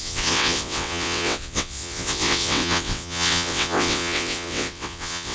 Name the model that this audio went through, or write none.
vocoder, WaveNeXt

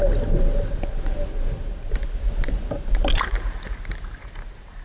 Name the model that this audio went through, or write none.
none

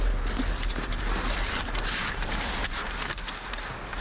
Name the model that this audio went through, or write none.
none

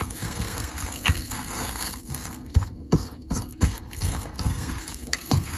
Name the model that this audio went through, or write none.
codec, SNAC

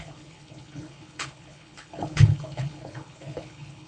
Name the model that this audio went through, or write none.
codec, HILCodec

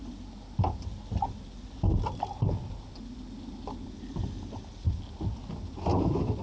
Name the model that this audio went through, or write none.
none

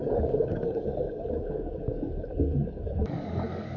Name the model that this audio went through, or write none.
codec, DAC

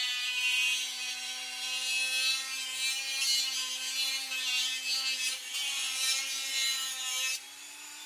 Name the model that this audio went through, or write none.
vocoder, BigVGAN v2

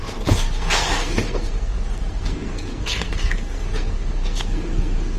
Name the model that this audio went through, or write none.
codec, SNAC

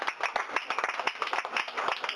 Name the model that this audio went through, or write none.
none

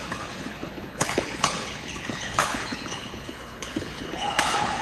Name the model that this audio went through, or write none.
codec, HILCodec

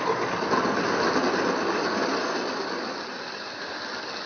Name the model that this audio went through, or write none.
none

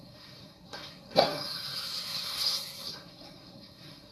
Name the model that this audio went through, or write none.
codec, SNAC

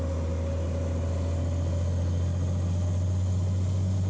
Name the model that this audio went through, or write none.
none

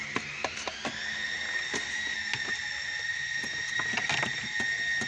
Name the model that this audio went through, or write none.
none